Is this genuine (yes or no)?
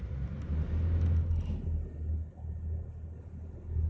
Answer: yes